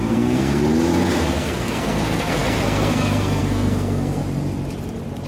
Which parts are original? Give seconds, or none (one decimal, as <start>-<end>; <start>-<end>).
0.6-1.2; 4.2-5.3